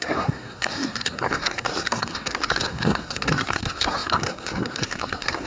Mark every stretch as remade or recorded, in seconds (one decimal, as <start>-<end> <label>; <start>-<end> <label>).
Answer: 0.0-5.5 remade